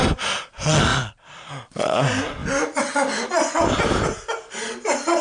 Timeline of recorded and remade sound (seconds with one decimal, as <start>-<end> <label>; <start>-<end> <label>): 0.0-0.9 recorded; 0.9-1.5 remade; 1.5-2.4 recorded; 2.4-3.3 remade; 3.3-5.2 recorded